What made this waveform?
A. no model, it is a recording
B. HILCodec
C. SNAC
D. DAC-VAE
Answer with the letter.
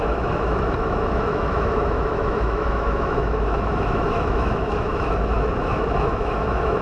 D